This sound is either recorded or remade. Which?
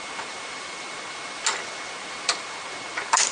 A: recorded